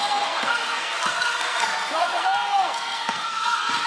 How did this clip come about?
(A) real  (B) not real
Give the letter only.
B